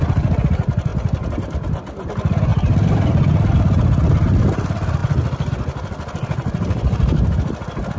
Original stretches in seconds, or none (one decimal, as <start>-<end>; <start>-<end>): 0.0-2.5; 3.1-8.0